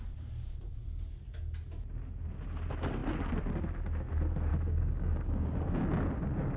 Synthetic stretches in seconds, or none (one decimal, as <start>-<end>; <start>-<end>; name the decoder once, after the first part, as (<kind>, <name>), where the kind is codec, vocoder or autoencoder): 4.5-6.0 (codec, DAC)

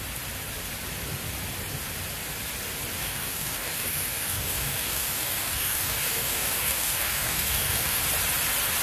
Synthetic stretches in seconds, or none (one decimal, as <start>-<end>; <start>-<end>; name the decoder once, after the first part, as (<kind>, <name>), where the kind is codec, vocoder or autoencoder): 3.0-8.0 (codec, DAC)

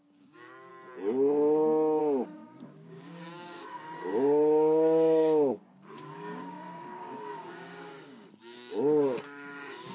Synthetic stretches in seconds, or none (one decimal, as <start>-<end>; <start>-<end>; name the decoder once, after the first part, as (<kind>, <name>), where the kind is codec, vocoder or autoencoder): 0.0-0.7 (codec, DAC); 2.0-9.9

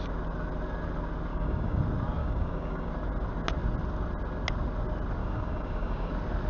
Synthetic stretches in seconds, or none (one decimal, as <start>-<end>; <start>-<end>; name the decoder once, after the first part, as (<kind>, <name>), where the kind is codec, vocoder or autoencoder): 1.3-1.8 (codec, DAC); 2.2-2.9; 5.2-6.1

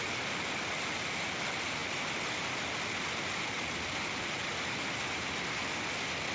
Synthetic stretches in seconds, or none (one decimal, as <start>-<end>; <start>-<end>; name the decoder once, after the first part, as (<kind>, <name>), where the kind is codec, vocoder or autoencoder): none

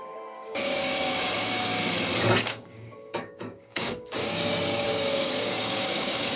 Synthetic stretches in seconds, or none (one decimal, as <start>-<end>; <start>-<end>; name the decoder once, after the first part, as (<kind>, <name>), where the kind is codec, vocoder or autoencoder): 0.0-1.7 (codec, DAC); 2.4-6.4

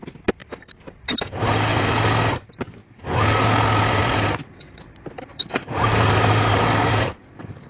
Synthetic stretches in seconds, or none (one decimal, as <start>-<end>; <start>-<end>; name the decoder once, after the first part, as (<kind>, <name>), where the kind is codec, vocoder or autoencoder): 2.8-3.6 (codec, DAC); 5.3-7.7

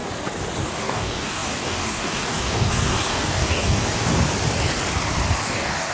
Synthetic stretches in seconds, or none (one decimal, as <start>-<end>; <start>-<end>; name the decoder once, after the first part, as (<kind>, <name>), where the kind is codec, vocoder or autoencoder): 0.6-4.1 (codec, DAC); 5.4-5.9